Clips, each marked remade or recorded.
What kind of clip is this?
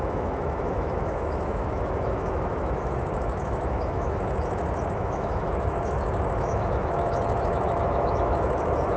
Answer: remade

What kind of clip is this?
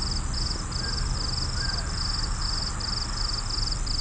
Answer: recorded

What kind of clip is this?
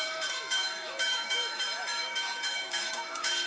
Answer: remade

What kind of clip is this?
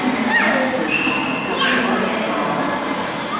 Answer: recorded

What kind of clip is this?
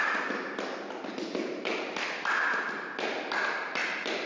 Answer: recorded